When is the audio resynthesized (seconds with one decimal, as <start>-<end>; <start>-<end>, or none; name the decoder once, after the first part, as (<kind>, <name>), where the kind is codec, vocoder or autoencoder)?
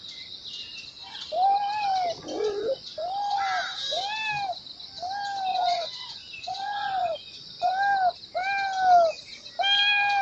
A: 5.5-7.7 (vocoder, Vocos)